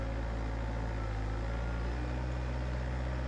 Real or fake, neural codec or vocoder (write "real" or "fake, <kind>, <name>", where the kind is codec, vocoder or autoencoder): fake, vocoder, BigVGAN v2